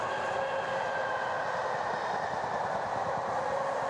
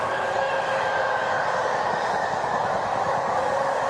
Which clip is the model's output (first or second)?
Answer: second